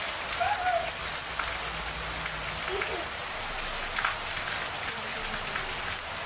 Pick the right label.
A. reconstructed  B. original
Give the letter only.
B